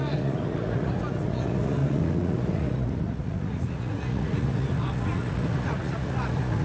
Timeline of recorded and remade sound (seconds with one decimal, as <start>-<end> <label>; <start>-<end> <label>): 0.0-6.6 remade